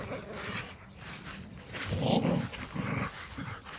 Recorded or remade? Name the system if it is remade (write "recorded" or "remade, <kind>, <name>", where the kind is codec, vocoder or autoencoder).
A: recorded